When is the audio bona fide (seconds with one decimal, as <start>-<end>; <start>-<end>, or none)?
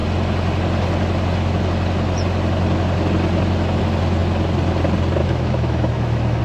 0.0-5.2